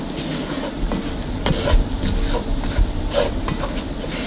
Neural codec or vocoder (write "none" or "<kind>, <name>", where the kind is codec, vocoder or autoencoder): none